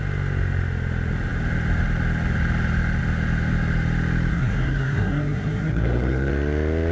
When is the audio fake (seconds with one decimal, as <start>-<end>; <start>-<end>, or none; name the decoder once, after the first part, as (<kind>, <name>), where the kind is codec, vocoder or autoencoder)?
4.3-6.3 (codec, SNAC)